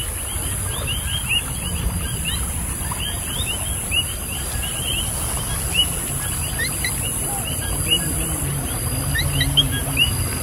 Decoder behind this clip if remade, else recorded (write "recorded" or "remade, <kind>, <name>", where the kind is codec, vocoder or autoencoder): recorded